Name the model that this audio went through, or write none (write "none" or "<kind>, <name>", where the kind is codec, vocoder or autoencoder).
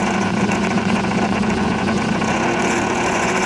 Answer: vocoder, Vocos